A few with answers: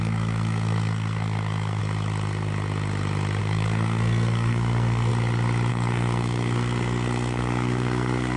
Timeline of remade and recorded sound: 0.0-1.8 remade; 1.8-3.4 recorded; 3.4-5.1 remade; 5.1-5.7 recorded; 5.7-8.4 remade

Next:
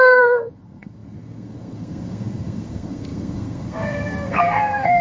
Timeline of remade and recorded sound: 0.0-5.0 remade

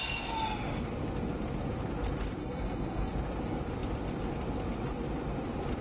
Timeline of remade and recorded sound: 0.0-2.4 recorded; 2.4-3.1 remade; 3.1-5.8 recorded

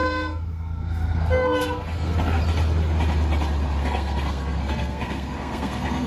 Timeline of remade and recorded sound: 0.0-2.4 remade; 2.4-3.8 recorded; 3.8-6.1 remade

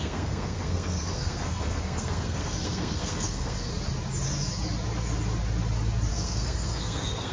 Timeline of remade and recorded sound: 0.0-3.7 remade; 3.7-6.1 recorded; 6.1-7.3 remade

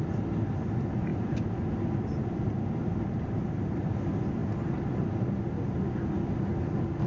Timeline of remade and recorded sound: 0.0-7.1 recorded